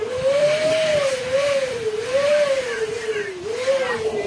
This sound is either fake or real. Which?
fake